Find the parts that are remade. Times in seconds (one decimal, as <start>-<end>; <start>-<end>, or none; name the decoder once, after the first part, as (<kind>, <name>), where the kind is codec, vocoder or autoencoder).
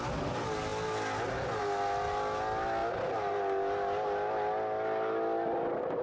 none